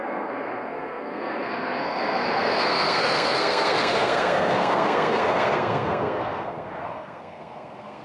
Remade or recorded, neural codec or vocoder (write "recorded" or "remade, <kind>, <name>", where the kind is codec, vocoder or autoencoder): remade, codec, SNAC